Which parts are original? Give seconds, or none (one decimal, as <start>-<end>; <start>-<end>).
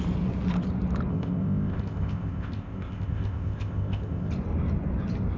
0.0-1.1; 4.3-5.4